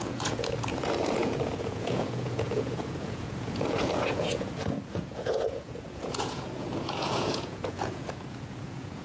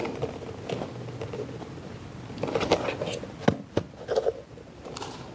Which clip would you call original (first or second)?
second